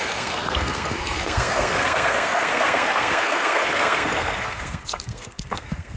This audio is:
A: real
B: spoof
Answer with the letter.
B